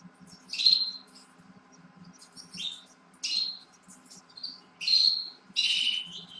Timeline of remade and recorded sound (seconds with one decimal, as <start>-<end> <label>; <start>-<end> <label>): 0.0-6.4 recorded